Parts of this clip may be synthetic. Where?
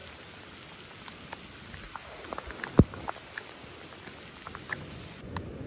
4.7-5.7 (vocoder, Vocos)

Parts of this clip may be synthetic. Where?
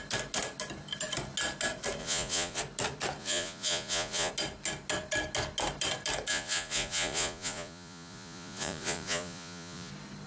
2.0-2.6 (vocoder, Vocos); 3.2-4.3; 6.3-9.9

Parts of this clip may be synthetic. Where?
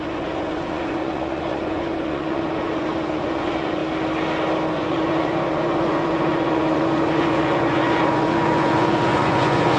0.0-3.8 (vocoder, Vocos); 4.7-9.8